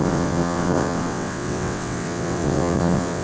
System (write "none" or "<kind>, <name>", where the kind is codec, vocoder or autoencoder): vocoder, WaveNeXt